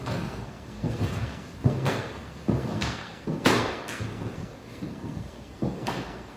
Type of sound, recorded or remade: remade